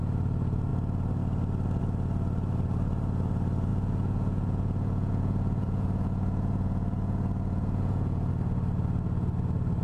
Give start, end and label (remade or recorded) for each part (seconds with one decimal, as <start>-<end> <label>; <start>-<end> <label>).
0.0-3.7 recorded; 3.7-8.3 remade; 8.3-9.8 recorded

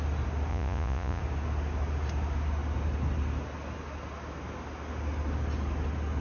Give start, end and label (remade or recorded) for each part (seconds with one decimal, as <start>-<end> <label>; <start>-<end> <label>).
0.0-0.5 recorded; 0.5-1.2 remade; 1.2-6.2 recorded

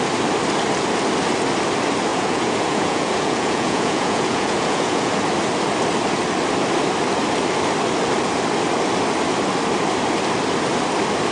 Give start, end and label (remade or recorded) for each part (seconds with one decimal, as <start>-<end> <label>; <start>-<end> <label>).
0.0-2.1 recorded; 2.1-5.1 remade; 5.1-11.3 recorded

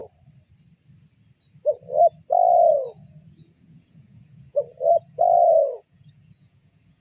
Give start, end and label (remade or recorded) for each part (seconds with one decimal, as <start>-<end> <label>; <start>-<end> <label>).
0.0-2.9 recorded; 2.9-7.0 remade